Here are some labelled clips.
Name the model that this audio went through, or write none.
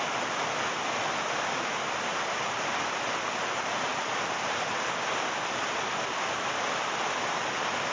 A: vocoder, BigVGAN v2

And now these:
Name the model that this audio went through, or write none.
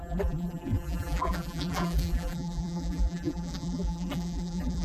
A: vocoder, BigVGAN v2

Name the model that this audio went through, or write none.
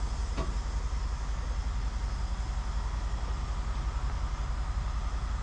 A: none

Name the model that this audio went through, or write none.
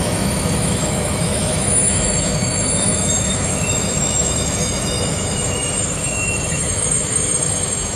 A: autoencoder, DAC-VAE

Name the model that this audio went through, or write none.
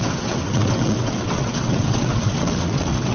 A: vocoder, WaveNeXt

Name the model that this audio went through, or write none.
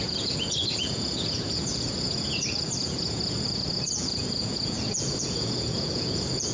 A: vocoder, Vocos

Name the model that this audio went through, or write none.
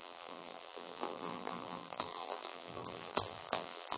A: vocoder, BigVGAN v2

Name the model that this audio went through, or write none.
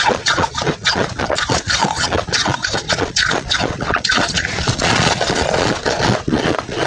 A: vocoder, Vocos